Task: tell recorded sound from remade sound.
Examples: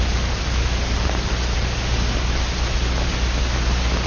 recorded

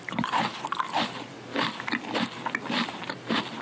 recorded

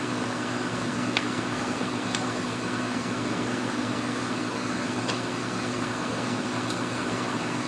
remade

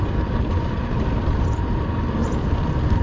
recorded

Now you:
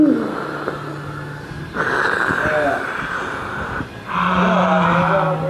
recorded